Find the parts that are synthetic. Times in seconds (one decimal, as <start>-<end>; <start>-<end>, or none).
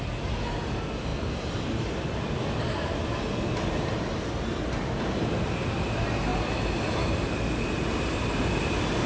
1.1-2.6